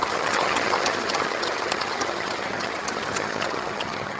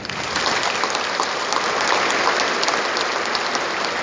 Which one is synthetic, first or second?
first